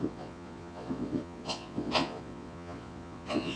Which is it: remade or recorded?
remade